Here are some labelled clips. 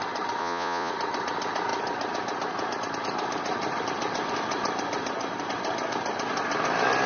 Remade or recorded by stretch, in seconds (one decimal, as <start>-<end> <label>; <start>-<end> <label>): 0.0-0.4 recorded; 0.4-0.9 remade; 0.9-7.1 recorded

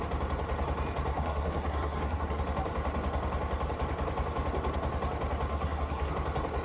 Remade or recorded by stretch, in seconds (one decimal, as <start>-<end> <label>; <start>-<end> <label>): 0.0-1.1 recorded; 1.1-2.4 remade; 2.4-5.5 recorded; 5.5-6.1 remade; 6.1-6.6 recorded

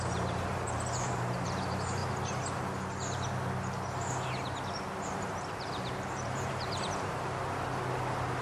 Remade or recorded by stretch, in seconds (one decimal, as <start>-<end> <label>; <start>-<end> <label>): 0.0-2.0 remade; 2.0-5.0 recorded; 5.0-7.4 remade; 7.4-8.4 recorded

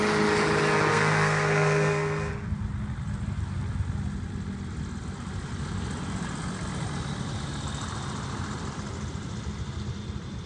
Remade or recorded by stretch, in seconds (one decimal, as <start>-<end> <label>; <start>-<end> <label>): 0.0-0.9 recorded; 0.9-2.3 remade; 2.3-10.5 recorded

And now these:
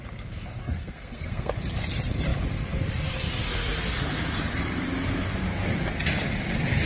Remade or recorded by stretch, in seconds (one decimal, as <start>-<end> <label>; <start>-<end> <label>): 0.0-0.6 recorded; 0.6-1.5 remade; 1.5-6.9 recorded